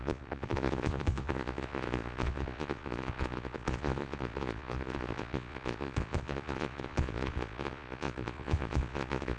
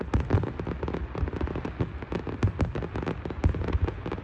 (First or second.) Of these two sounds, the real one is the second